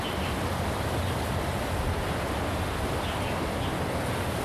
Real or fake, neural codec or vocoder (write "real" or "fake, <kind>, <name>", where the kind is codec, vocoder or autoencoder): real